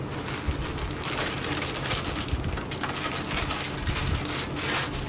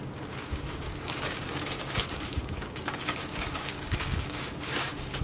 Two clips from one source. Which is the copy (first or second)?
second